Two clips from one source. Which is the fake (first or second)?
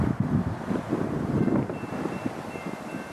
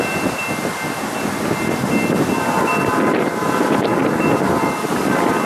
first